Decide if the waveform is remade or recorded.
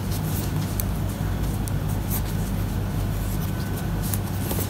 recorded